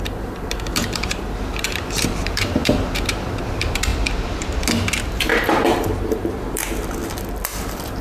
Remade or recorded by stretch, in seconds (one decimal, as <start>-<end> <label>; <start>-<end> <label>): 0.0-3.9 remade; 3.9-5.0 recorded; 5.0-7.0 remade; 7.0-7.6 recorded; 7.6-8.0 remade